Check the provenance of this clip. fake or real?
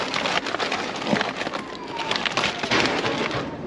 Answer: real